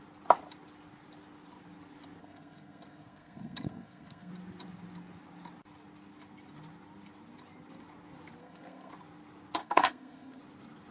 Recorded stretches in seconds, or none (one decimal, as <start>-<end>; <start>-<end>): 0.0-2.2; 4.3-8.4; 8.9-9.6; 10.4-10.9